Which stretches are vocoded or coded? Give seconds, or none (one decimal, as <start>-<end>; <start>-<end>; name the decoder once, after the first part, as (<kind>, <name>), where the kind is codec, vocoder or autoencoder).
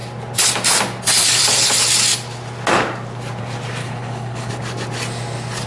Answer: 3.8-4.5 (codec, HILCodec)